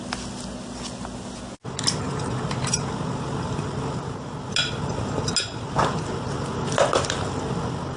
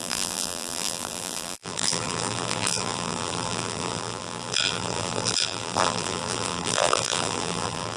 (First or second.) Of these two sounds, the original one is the first